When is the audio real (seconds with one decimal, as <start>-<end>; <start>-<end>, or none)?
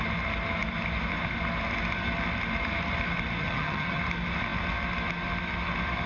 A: 0.0-3.4; 4.0-6.1